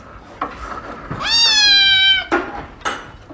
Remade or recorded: recorded